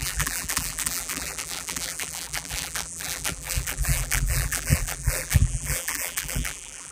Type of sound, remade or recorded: remade